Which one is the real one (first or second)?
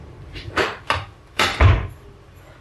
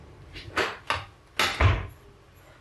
second